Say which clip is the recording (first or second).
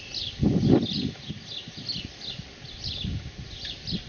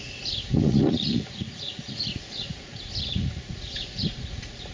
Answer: first